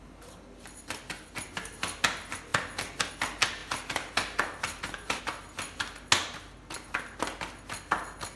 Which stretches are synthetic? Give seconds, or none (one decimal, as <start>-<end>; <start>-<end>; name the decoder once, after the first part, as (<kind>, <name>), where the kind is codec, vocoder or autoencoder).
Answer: 3.6-5.2 (vocoder, BigVGAN v2)